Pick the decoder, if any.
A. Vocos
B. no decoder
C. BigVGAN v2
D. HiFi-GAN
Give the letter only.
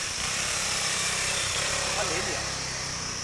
C